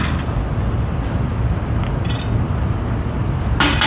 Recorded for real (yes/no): yes